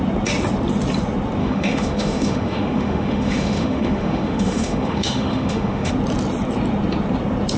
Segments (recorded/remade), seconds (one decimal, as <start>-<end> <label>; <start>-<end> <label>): 0.0-1.4 recorded; 1.4-5.9 remade; 5.9-7.6 recorded